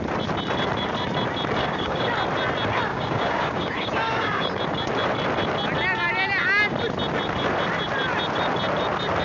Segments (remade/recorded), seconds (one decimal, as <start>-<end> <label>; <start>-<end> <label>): 0.0-1.6 recorded; 1.6-2.1 remade; 2.1-2.9 recorded; 2.9-4.6 remade; 4.6-9.2 recorded